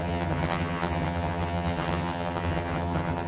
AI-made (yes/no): yes